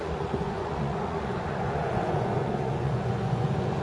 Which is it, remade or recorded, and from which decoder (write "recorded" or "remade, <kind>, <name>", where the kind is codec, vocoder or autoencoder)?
remade, vocoder, Vocos